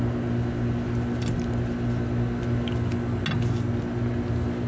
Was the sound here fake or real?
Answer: real